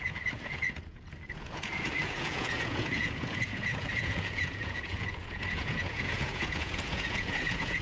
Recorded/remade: remade